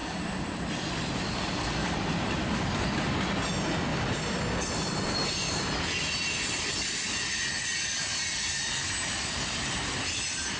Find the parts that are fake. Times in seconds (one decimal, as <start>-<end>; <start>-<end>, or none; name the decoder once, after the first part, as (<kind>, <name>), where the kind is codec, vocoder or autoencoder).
0.0-0.6 (vocoder, BigVGAN v2); 1.8-2.7